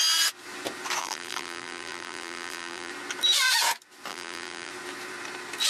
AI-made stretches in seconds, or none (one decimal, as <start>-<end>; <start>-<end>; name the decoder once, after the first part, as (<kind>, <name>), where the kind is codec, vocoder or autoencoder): 1.0-2.9 (vocoder, BigVGAN v2); 4.1-4.7